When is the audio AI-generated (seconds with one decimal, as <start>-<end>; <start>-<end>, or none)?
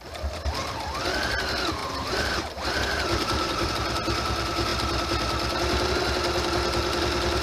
1.8-3.7